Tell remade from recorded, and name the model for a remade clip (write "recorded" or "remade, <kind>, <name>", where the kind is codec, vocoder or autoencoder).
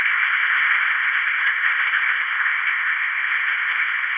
remade, codec, ZipCodec